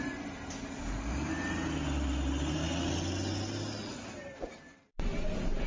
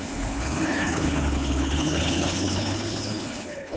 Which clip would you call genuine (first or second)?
first